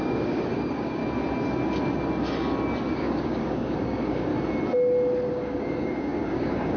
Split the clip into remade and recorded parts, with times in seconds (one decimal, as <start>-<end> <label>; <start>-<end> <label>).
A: 0.0-1.0 remade; 1.0-2.9 recorded; 2.9-4.3 remade; 4.3-5.3 recorded; 5.3-6.8 remade